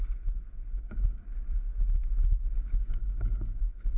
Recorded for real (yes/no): no